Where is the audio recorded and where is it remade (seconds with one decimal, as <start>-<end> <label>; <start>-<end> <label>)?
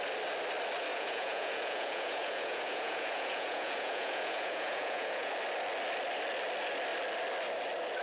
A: 0.0-0.9 recorded; 0.9-5.3 remade; 5.3-8.0 recorded